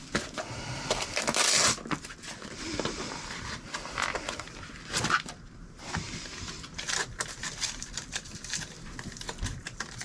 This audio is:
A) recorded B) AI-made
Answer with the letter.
B